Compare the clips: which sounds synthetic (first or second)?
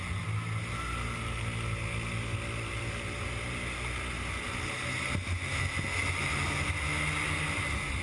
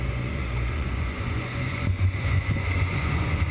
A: second